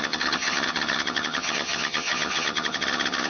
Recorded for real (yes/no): no